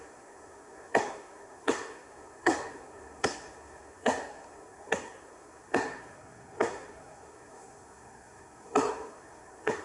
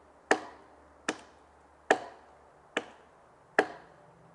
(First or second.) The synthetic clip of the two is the first